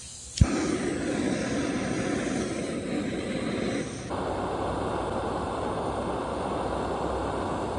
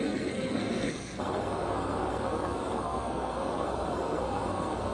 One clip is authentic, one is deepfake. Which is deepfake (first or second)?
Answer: second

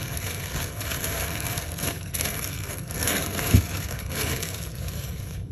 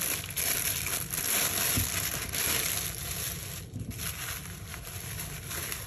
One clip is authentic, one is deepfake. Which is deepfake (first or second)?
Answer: first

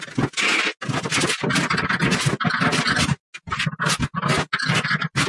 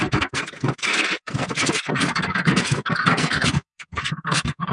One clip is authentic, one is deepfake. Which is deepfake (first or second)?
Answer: second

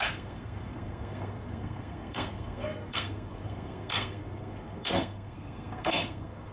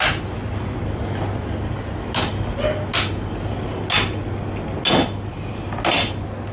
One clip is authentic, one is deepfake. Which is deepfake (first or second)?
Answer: first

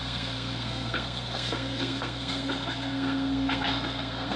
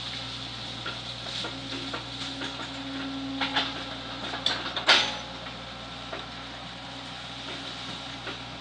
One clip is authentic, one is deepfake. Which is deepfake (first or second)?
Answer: first